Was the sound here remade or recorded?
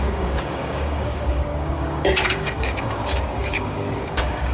remade